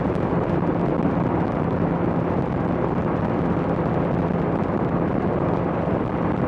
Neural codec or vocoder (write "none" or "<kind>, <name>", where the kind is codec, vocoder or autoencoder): none